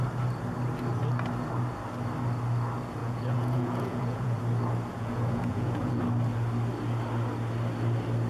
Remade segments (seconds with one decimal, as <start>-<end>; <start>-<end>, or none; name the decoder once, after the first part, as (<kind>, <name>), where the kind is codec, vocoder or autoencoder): 3.0-4.4 (vocoder, Vocos); 4.9-6.0